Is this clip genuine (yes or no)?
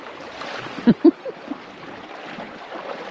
yes